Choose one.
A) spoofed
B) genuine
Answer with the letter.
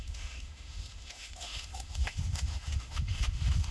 A